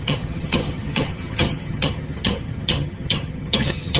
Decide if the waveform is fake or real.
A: fake